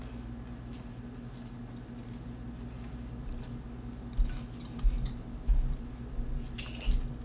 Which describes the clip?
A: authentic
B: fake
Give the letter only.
A